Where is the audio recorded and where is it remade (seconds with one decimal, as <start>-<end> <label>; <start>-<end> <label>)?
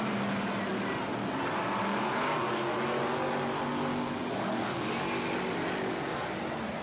0.0-3.9 recorded; 3.9-4.6 remade; 4.6-6.8 recorded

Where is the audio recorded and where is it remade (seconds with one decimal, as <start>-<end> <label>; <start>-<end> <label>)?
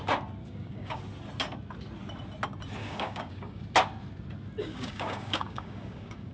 0.0-0.4 recorded; 0.4-1.0 remade; 1.0-2.8 recorded; 2.8-3.6 remade; 3.6-4.6 recorded; 4.6-6.3 remade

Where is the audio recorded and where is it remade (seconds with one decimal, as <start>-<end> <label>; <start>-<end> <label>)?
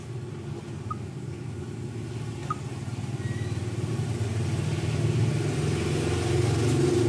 0.0-7.1 recorded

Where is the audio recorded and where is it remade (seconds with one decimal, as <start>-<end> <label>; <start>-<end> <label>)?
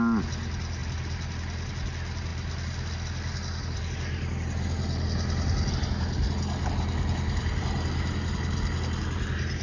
0.0-9.6 recorded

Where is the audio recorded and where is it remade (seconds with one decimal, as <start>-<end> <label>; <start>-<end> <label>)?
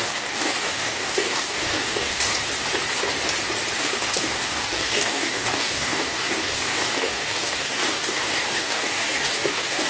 0.0-2.3 remade; 2.3-3.8 recorded; 3.8-9.9 remade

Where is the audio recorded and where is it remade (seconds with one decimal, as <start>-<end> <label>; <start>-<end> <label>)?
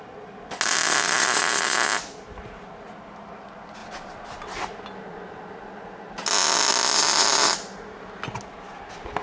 0.0-9.2 recorded